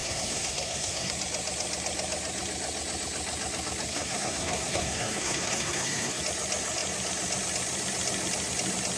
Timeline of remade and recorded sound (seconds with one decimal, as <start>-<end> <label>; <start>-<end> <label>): 0.0-1.1 remade; 1.1-3.9 recorded; 3.9-6.2 remade; 6.2-9.0 recorded

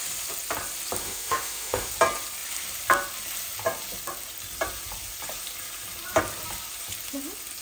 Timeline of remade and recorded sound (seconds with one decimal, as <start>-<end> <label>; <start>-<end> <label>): 0.0-1.0 recorded; 1.0-1.9 remade; 1.9-7.6 recorded

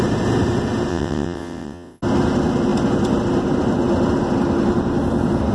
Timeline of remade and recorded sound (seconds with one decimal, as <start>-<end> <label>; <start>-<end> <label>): 0.0-0.9 recorded; 0.9-2.0 remade; 2.0-5.5 recorded

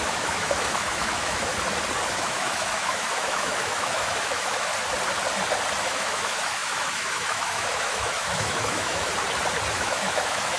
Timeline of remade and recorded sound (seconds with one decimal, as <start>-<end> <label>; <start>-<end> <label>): 0.0-1.5 remade; 1.5-2.1 recorded; 2.1-4.7 remade; 4.7-5.8 recorded; 5.8-9.1 remade; 9.1-9.7 recorded; 9.7-10.6 remade

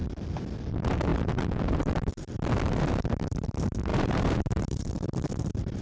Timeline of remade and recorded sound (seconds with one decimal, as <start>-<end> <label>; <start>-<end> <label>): 0.0-0.7 recorded; 0.7-5.8 remade

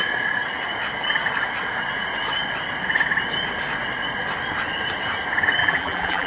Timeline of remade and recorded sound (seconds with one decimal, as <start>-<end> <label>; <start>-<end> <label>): 0.0-5.6 recorded; 5.6-6.3 remade

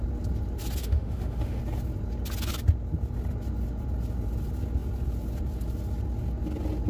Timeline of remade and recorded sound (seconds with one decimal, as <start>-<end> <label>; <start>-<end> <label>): 0.0-0.8 recorded; 0.8-1.6 remade; 1.6-6.9 recorded

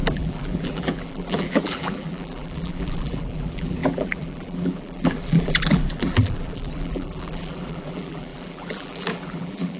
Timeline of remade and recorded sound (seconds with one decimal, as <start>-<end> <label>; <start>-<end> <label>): 0.0-9.8 remade